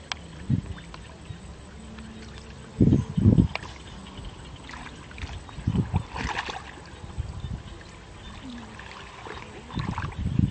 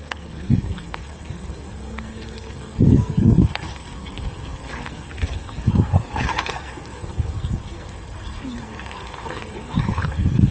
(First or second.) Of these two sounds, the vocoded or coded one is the second